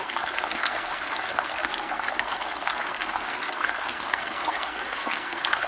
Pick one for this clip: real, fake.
fake